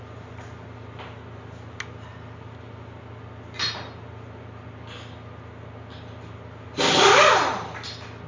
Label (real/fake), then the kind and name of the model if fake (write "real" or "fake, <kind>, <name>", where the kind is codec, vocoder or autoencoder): real